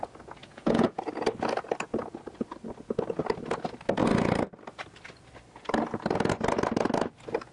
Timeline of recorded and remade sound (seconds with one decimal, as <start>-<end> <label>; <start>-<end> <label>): 0.0-0.4 recorded; 0.4-1.0 remade; 1.0-7.5 recorded